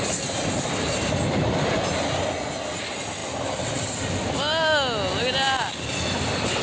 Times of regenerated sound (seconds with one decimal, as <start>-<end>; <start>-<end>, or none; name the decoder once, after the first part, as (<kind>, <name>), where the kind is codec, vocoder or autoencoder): none